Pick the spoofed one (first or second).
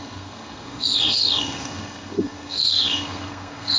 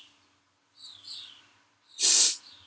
first